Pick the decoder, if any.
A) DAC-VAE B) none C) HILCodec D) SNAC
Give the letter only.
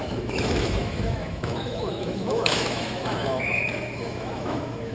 A